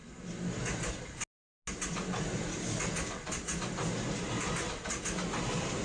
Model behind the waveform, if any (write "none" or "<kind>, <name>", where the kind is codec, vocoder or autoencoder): none